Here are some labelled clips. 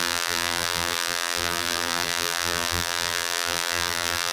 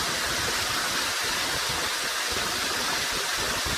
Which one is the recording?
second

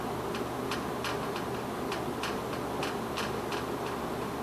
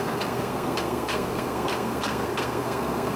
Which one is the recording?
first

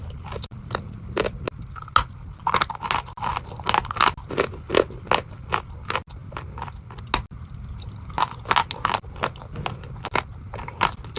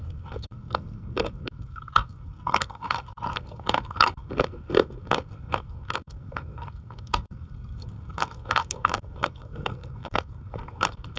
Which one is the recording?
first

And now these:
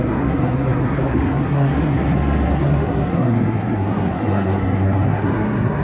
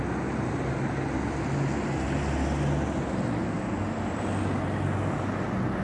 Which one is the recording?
second